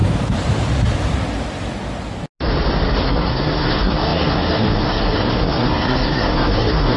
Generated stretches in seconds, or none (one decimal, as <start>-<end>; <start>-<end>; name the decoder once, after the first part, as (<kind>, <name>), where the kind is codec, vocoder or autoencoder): 3.0-7.0 (codec, SNAC)